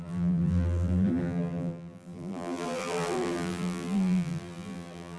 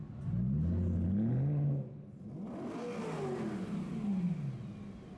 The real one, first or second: second